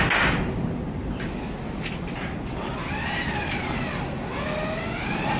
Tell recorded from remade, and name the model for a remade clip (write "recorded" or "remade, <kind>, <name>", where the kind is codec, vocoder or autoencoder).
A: recorded